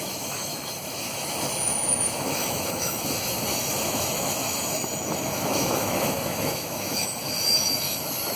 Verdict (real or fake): fake